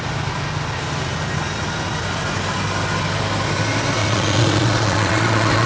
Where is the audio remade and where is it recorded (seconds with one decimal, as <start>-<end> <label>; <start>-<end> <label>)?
0.0-4.0 recorded; 4.0-5.7 remade